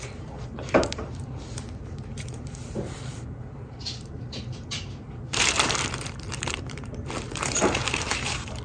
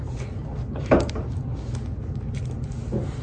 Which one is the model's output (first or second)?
first